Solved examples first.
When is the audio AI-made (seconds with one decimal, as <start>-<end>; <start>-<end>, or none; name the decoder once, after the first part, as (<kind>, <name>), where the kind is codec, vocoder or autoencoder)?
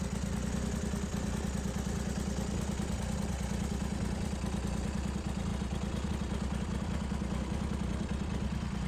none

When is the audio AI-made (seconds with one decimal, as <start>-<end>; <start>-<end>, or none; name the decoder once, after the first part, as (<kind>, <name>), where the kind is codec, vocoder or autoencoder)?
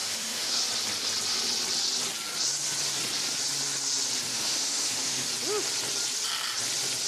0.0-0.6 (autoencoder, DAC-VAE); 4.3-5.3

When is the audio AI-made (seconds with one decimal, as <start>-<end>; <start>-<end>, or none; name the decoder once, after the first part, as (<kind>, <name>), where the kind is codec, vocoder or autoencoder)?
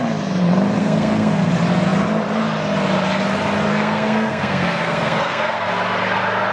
0.8-1.5 (codec, SNAC); 3.7-5.7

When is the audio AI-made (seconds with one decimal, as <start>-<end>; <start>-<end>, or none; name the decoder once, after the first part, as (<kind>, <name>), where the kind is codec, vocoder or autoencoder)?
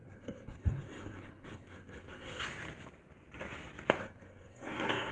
0.0-2.4 (codec, SNAC); 4.0-5.1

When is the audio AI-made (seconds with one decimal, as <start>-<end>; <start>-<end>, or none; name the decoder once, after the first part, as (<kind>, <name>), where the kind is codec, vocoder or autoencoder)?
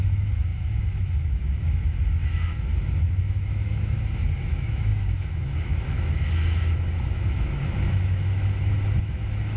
0.0-9.6 (autoencoder, DAC-VAE)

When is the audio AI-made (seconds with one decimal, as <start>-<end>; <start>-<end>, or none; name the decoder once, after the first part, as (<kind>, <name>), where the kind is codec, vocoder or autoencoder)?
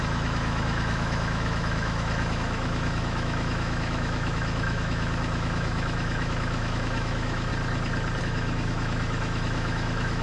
0.0-7.5 (autoencoder, DAC-VAE); 8.2-10.2